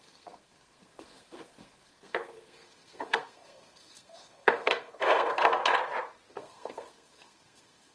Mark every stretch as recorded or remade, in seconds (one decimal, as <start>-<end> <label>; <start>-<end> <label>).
0.0-5.6 remade; 5.6-6.3 recorded; 6.3-7.9 remade